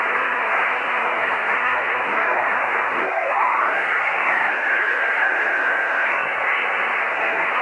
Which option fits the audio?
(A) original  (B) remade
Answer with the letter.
B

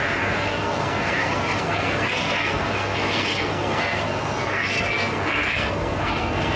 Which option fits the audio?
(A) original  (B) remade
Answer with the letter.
B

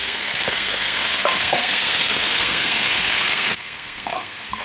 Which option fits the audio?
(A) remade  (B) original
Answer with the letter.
A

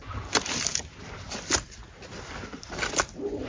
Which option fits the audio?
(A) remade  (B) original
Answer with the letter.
B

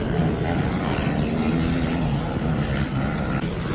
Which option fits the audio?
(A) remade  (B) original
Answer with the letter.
B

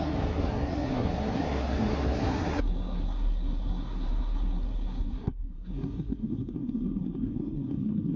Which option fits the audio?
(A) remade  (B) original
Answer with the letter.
A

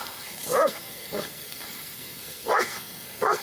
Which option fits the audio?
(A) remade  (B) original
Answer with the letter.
A